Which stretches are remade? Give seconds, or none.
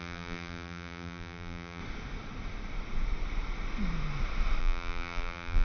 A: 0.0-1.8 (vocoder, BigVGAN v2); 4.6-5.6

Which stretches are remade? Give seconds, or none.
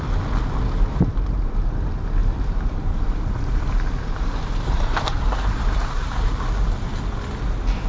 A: 2.2-6.5 (vocoder, BigVGAN v2)